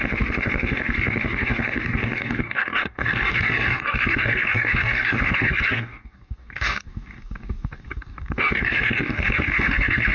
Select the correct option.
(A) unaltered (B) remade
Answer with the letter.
B